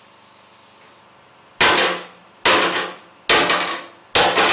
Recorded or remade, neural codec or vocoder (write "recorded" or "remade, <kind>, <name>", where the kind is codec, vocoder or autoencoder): recorded